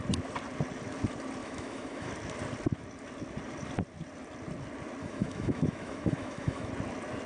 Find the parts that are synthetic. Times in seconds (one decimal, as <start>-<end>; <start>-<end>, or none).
1.4-2.1; 5.0-6.7